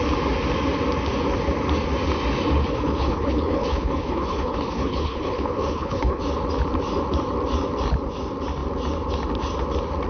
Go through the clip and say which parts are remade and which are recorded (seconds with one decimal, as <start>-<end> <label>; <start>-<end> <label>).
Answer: 0.0-2.6 recorded; 2.6-6.2 remade; 6.2-10.1 recorded